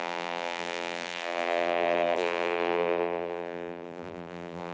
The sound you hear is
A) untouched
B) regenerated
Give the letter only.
B